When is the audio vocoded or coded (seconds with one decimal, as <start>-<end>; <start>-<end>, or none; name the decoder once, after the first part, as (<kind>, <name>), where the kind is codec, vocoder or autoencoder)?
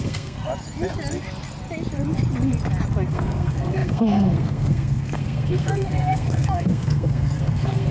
0.0-0.5 (codec, SNAC); 3.1-7.9